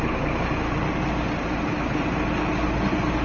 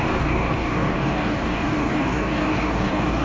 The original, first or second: first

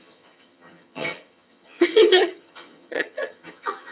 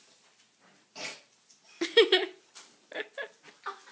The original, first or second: second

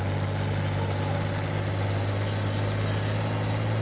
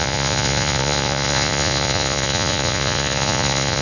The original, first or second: first